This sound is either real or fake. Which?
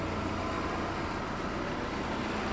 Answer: real